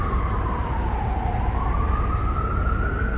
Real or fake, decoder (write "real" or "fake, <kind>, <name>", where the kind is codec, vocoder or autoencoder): fake, vocoder, BigVGAN v2